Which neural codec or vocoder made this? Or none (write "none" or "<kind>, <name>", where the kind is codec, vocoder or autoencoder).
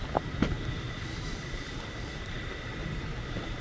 none